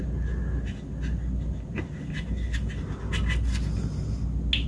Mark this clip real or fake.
real